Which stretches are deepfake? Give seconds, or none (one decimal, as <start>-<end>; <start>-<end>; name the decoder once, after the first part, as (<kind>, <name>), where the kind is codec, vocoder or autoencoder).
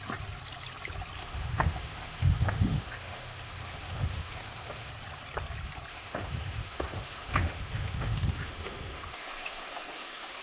1.2-4.9 (autoencoder, DAC-VAE); 5.9-10.4